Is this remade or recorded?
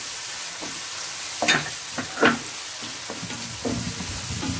recorded